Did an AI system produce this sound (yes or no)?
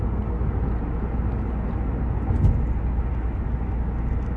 no